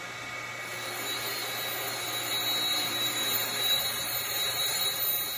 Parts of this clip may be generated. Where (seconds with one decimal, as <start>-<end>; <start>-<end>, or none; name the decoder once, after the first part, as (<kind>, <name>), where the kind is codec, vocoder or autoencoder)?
2.7-5.0 (vocoder, BigVGAN v2)